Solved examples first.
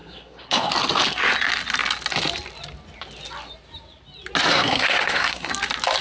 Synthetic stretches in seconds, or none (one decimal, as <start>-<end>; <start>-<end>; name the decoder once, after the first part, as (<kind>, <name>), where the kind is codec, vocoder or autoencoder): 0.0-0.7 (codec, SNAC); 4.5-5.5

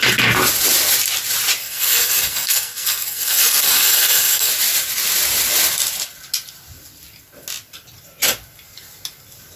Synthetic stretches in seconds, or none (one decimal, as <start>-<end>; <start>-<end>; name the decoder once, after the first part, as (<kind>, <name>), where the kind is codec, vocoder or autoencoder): 1.6-4.5 (codec, SNAC)

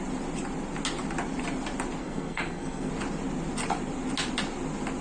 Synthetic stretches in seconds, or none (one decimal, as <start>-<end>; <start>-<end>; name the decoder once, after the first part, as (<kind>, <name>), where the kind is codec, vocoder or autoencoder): 2.0-2.9 (codec, SNAC)

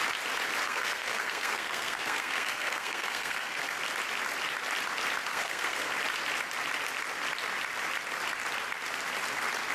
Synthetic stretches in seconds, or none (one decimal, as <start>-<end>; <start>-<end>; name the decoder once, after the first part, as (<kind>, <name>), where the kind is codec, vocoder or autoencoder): 0.6-3.8 (codec, SNAC); 5.3-5.9